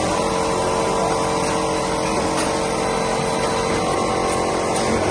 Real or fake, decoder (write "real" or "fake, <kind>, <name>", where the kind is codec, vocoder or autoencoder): real